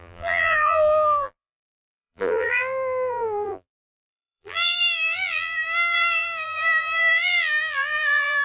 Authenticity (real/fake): fake